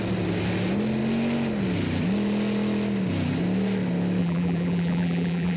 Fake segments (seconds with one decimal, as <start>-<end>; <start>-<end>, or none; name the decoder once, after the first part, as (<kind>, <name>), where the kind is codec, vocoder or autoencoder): 4.2-5.6 (vocoder, BigVGAN v2)